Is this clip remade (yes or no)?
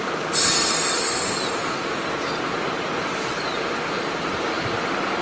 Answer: no